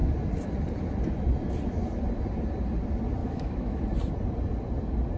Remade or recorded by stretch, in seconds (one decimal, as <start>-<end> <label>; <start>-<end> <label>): 0.0-3.2 recorded; 3.2-3.8 remade; 3.8-5.2 recorded